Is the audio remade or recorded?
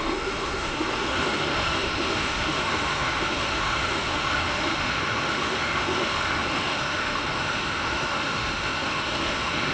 remade